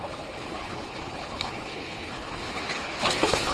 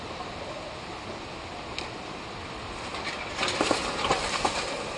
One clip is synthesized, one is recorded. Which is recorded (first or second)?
second